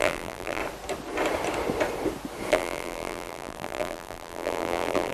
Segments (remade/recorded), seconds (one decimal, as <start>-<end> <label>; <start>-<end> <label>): 0.0-0.6 remade; 0.6-2.5 recorded; 2.5-5.1 remade

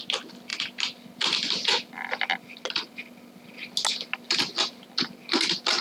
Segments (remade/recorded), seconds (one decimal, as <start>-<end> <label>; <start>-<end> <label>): 0.0-5.8 recorded

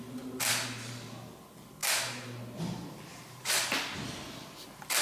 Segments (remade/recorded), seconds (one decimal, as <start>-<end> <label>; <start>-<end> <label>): 0.0-3.1 recorded; 3.1-3.6 remade; 3.6-5.0 recorded